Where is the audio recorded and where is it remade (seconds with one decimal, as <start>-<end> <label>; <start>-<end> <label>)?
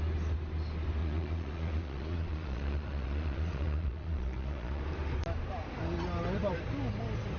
0.0-1.0 recorded; 1.0-4.8 remade; 4.8-7.4 recorded